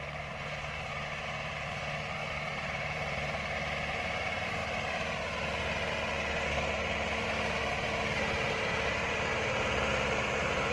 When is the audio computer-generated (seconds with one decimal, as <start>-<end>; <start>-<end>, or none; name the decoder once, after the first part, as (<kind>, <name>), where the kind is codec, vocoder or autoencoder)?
0.0-0.5 (vocoder, BigVGAN v2); 2.3-4.6; 8.5-10.7